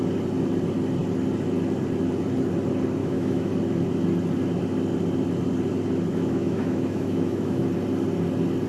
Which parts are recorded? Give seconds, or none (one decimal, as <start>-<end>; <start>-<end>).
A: 0.0-3.0; 3.5-6.1; 7.6-8.7